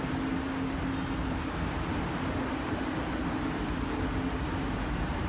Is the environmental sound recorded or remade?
recorded